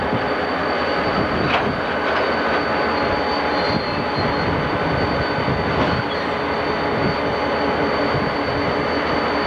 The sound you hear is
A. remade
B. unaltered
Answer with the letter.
B